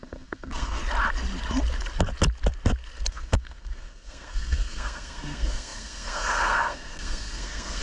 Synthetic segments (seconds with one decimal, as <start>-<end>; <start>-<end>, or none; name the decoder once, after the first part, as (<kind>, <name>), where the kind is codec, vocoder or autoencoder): 0.0-0.8 (codec, SNAC); 3.1-7.8